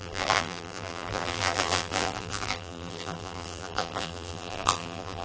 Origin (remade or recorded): remade